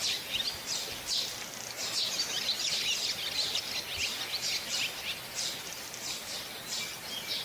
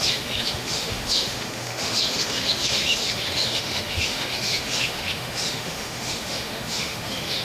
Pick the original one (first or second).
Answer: first